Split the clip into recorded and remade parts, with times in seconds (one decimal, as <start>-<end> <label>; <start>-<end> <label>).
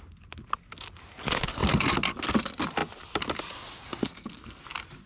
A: 0.0-4.0 recorded; 4.0-4.6 remade; 4.6-5.1 recorded